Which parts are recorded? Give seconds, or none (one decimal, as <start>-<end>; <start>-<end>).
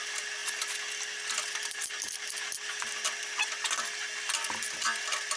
0.0-5.4